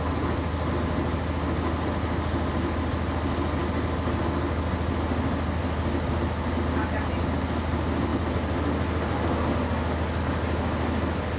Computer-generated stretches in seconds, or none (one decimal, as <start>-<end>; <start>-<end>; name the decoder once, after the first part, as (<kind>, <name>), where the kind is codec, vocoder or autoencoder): 5.6-6.1 (vocoder, BigVGAN v2)